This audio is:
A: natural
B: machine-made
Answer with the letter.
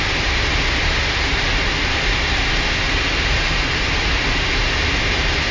A